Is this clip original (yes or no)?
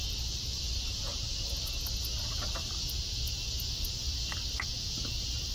yes